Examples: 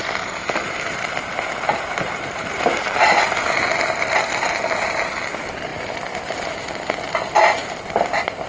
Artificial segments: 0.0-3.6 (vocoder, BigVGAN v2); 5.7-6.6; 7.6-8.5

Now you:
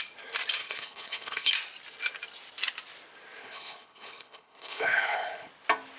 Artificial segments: 0.6-1.5 (codec, HILCodec); 3.4-5.5

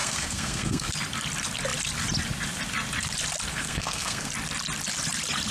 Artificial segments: 0.0-0.9 (codec, SNAC); 3.5-4.3

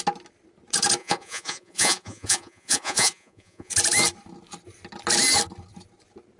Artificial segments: 1.0-3.7 (vocoder, Vocos)

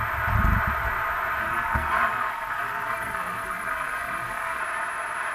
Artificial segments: 1.4-4.6 (codec, SNAC)

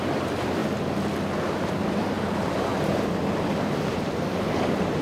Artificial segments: 0.0-0.6 (vocoder, BigVGAN v2); 1.9-2.7; 3.6-5.0

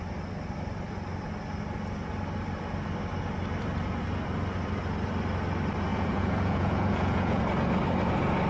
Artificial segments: 5.9-7.4 (vocoder, Vocos)

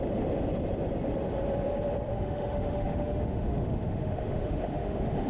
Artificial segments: 2.1-5.3 (autoencoder, DAC-VAE)